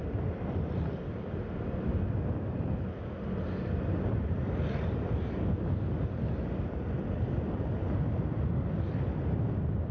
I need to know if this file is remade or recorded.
recorded